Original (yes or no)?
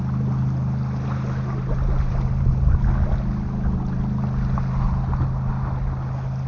yes